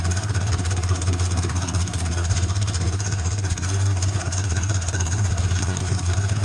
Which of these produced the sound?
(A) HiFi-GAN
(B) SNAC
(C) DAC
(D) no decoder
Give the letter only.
B